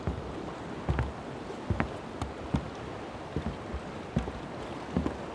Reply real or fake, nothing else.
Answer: real